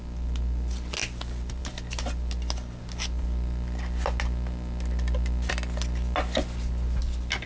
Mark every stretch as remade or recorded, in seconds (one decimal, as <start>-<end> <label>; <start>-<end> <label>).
0.0-7.5 recorded